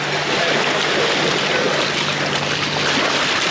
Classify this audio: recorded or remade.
recorded